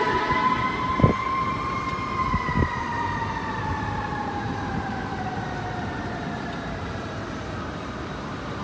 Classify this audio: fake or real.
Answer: fake